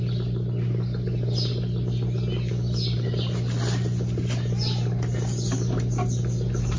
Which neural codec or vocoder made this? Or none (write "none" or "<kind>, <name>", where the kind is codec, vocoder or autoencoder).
none